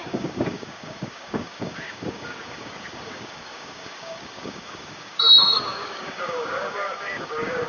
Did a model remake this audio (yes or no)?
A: yes